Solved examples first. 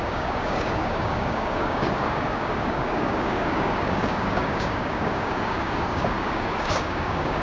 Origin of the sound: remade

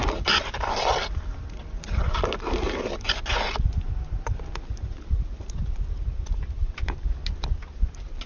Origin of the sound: recorded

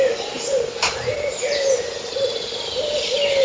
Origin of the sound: remade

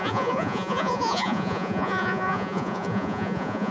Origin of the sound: remade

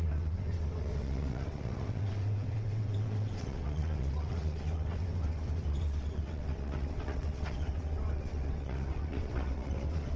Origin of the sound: remade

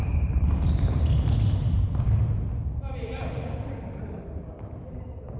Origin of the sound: remade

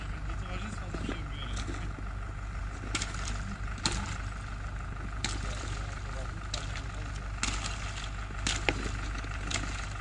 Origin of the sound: recorded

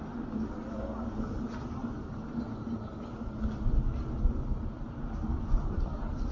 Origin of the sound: recorded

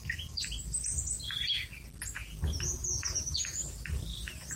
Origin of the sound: recorded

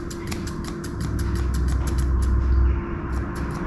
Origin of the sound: recorded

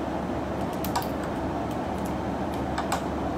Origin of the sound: recorded